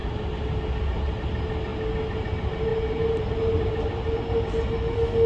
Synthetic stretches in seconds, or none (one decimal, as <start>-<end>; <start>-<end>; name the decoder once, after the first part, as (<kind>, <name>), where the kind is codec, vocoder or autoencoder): none